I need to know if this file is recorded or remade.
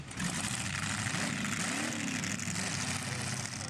recorded